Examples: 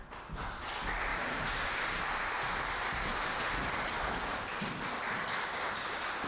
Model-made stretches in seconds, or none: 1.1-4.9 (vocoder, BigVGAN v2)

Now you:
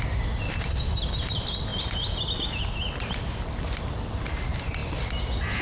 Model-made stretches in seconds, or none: none

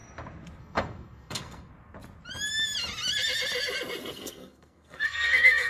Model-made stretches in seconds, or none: 0.6-1.7 (codec, SNAC); 4.1-5.7

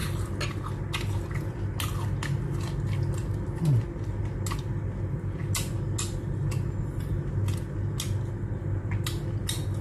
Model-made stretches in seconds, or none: none

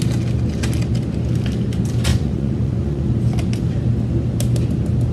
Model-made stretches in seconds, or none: 2.1-3.0 (vocoder, Vocos)

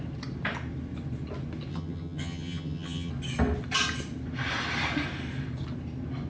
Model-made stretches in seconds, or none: 1.7-3.1 (vocoder, HiFi-GAN)

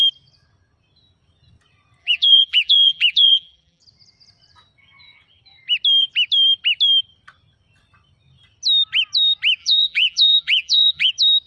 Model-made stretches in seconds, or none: 2.0-3.8 (vocoder, BigVGAN v2); 9.6-11.1

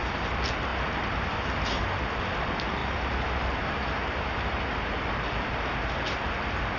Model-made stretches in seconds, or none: 2.8-4.6 (vocoder, BigVGAN v2)